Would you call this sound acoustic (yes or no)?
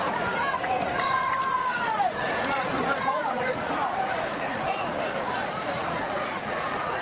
no